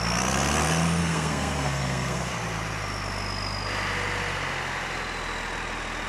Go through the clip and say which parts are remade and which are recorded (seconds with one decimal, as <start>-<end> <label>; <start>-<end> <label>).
0.0-1.0 recorded; 1.0-2.3 remade; 2.3-6.1 recorded